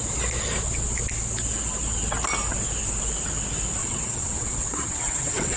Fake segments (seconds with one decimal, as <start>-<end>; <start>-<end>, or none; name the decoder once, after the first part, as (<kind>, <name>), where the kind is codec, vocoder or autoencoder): 3.8-5.6 (vocoder, WaveNeXt)